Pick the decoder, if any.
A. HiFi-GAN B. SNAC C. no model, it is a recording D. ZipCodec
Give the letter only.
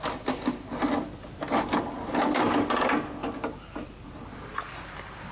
C